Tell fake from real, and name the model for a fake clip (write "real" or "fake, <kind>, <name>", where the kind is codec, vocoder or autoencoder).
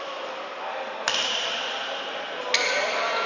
real